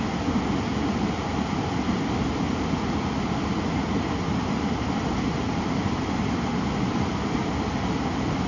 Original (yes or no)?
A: yes